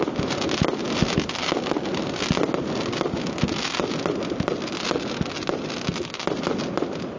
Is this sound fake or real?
real